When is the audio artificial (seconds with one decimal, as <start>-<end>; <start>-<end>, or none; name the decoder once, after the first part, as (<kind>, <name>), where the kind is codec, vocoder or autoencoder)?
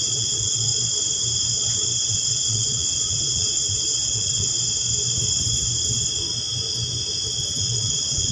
0.0-0.7 (vocoder, Vocos); 2.1-4.5; 7.6-8.3